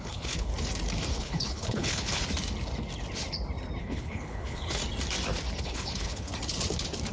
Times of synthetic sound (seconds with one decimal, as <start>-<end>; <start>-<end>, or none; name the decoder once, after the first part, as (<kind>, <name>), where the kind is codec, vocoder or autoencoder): 0.0-0.5 (codec, HILCodec); 1.2-2.2; 3.8-4.8; 5.6-6.3